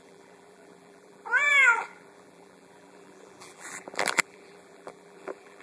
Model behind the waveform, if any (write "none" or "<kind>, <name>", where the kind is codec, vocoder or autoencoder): vocoder, BigVGAN v2